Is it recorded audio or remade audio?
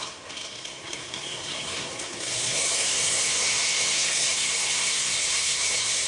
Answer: remade